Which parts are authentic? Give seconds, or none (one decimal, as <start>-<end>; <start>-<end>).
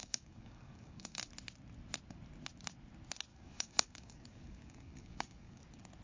1.2-3.3; 5.6-6.0